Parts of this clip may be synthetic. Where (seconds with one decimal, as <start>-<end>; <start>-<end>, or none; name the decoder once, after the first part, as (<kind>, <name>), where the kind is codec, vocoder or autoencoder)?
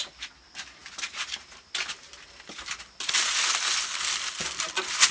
none